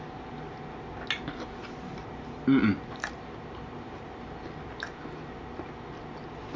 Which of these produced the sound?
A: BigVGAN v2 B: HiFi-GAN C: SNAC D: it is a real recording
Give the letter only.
D